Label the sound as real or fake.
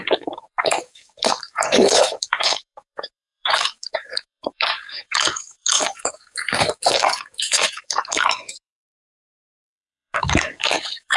fake